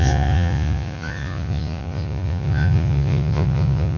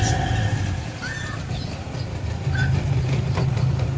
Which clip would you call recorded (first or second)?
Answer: second